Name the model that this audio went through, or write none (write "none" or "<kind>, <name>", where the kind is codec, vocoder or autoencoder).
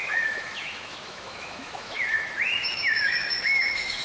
autoencoder, DAC-VAE